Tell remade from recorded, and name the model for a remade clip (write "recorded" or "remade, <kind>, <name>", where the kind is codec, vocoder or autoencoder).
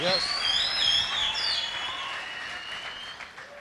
recorded